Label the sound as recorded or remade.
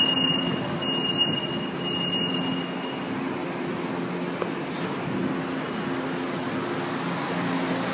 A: recorded